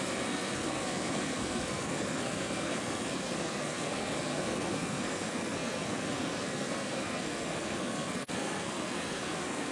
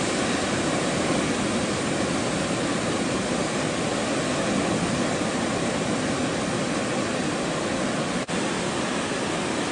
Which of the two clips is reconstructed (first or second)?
first